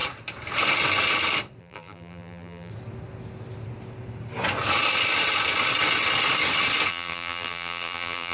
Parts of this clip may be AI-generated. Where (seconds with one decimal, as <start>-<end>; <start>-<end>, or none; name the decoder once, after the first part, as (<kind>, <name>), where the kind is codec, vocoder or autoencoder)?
1.6-2.7 (vocoder, BigVGAN v2); 6.9-8.3